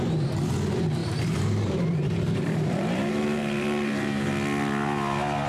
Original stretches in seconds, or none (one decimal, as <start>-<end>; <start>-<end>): 0.0-1.0; 4.3-5.5